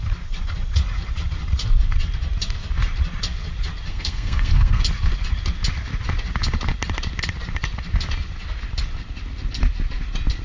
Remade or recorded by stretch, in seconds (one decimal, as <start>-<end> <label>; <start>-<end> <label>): 0.0-3.9 recorded; 3.9-4.8 remade; 4.8-10.4 recorded